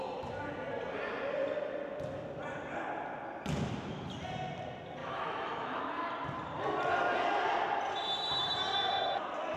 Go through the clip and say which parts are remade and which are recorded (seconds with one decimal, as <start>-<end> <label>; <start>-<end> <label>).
0.0-5.0 recorded; 5.0-5.8 remade; 5.8-9.6 recorded